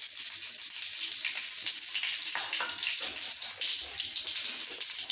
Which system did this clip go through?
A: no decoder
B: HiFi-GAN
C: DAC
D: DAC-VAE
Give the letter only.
A